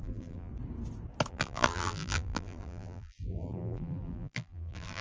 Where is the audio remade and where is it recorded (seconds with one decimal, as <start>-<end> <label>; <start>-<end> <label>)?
0.0-0.5 remade; 0.5-1.3 recorded; 1.3-5.0 remade